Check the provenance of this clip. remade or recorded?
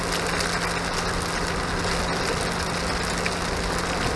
recorded